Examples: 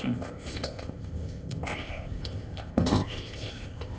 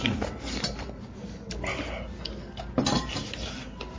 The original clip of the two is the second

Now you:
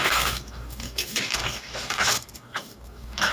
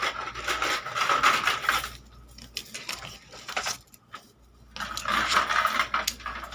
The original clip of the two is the second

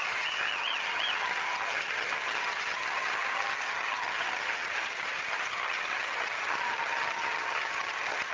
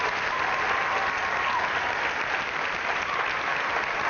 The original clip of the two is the second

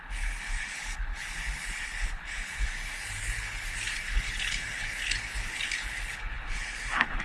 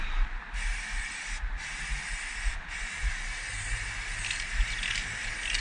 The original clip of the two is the second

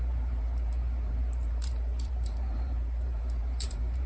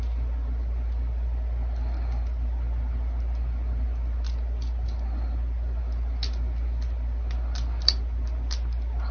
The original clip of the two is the second